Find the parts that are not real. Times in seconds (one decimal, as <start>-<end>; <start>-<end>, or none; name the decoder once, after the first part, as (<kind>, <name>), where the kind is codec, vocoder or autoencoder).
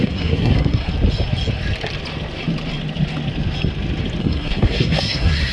0.0-0.9 (codec, SNAC); 4.2-5.5